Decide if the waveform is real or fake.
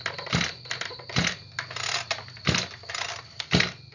real